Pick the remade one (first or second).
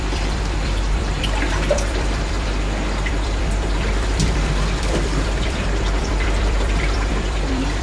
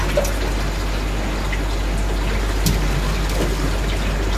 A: first